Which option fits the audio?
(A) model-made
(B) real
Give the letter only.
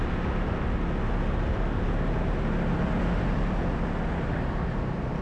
B